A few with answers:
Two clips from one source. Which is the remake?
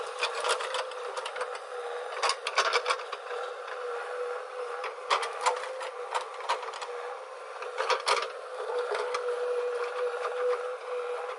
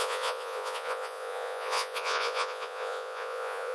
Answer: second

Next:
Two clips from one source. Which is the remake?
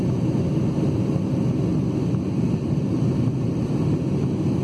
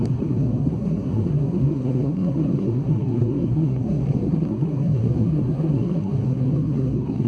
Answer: second